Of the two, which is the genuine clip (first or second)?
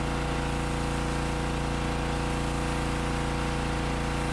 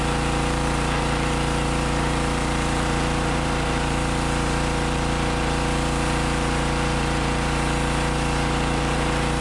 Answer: first